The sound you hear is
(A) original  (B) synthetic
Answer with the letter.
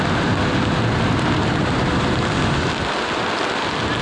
A